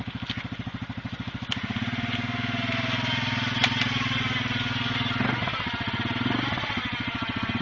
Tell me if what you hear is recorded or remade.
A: recorded